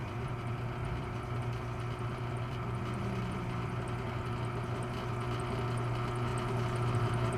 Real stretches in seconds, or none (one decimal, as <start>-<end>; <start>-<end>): 3.7-7.4